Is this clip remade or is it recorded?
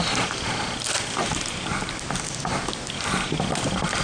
recorded